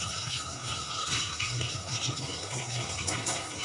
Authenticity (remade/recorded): remade